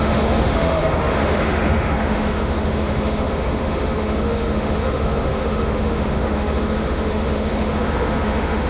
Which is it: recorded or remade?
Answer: remade